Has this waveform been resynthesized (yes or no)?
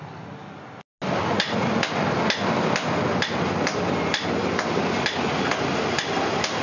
no